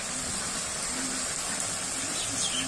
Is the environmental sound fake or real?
real